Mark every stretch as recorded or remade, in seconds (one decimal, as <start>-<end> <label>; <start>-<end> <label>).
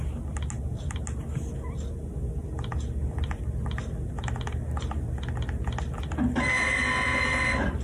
0.0-7.8 recorded